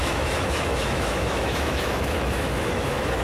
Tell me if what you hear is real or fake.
fake